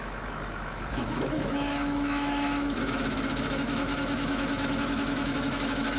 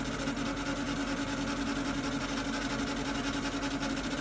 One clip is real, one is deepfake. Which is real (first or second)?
second